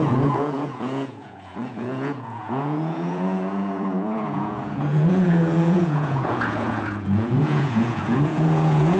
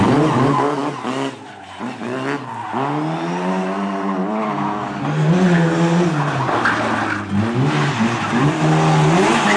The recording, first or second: second